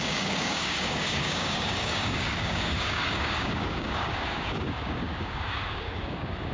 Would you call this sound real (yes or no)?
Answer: no